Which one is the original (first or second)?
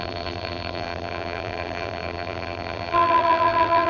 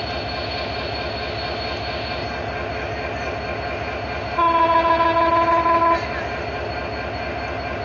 second